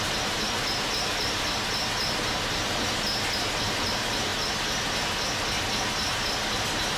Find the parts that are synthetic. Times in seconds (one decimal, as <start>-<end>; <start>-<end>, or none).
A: none